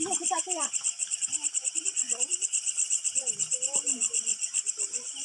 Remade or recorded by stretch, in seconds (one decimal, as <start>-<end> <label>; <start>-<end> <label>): 0.0-5.2 recorded